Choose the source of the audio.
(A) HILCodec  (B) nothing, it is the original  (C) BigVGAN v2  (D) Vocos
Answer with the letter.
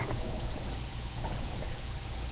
B